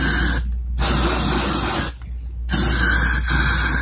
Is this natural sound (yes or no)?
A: yes